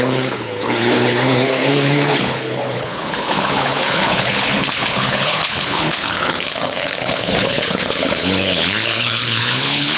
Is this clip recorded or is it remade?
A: remade